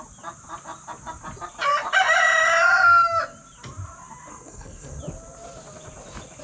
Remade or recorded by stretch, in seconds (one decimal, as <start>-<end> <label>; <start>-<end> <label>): 0.0-4.3 recorded; 4.3-5.0 remade; 5.0-6.4 recorded